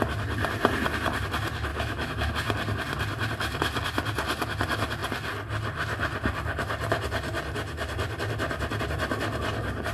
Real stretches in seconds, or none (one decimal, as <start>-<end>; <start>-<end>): 0.0-1.7; 2.3-9.9

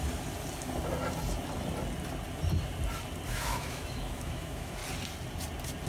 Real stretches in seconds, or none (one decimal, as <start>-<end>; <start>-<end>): 0.0-3.3; 4.8-5.9

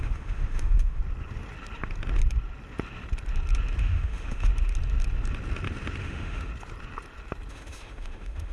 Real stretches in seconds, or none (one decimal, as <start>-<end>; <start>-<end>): 1.0-3.8; 4.5-6.0; 6.5-7.5

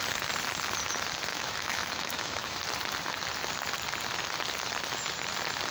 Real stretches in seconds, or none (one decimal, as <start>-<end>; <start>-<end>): 0.0-1.3; 2.6-5.7

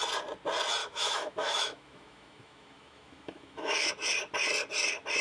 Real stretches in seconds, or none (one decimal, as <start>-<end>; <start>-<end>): 0.0-0.8; 3.9-5.2

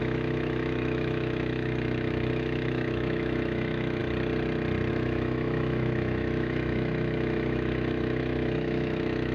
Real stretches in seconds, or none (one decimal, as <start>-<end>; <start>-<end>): 4.0-4.9

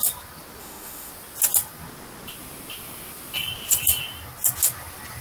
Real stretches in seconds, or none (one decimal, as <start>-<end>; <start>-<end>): 0.0-0.6; 1.1-5.2